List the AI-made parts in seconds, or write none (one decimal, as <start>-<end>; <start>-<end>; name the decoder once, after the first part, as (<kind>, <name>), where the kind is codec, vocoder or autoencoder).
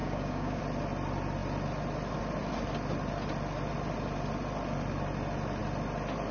0.0-0.6 (codec, DAC)